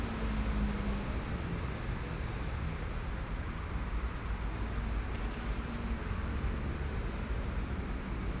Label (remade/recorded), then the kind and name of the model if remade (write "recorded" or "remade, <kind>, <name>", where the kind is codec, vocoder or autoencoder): recorded